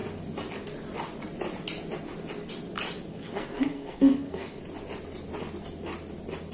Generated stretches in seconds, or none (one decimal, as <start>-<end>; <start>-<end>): 3.1-4.6